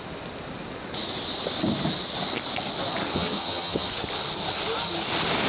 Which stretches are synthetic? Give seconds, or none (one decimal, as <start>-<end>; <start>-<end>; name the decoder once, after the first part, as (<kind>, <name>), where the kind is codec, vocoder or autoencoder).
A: 3.1-3.9 (vocoder, HiFi-GAN)